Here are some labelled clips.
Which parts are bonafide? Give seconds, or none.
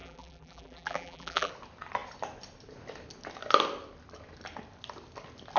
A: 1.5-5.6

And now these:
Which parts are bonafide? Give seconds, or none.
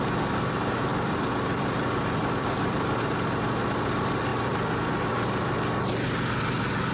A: 0.0-0.9; 3.0-6.9